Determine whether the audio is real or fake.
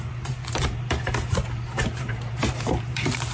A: fake